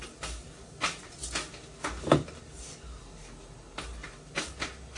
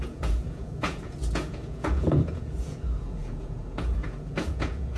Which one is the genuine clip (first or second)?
first